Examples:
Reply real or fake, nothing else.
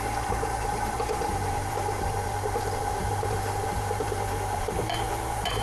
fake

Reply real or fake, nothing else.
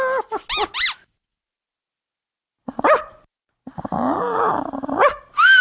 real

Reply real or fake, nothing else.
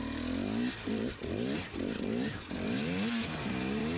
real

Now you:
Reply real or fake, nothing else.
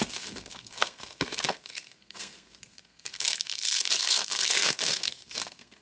fake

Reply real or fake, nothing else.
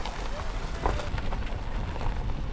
real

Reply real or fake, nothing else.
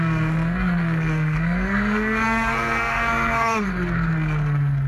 fake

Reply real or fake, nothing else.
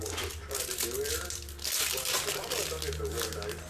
real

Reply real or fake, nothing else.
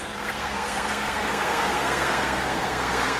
fake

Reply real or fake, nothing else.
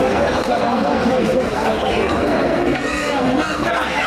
fake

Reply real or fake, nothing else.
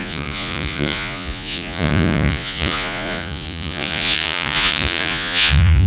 fake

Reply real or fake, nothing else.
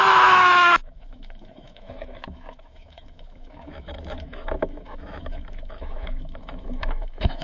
fake